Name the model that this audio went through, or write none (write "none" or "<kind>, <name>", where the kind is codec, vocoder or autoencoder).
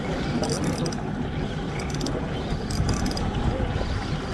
none